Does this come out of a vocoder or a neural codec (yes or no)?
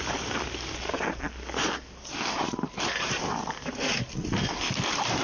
no